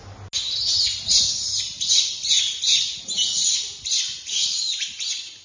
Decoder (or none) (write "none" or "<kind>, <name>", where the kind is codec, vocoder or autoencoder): none